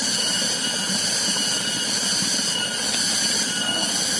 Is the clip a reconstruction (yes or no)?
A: no